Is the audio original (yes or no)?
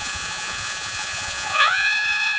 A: no